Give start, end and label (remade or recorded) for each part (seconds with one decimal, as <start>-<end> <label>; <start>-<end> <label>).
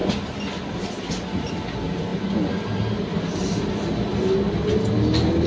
0.0-5.5 recorded